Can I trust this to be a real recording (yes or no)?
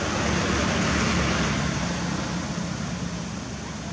yes